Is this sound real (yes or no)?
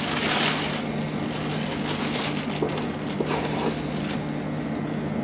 yes